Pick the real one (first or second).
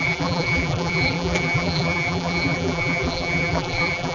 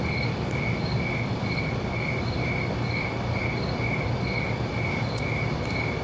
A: second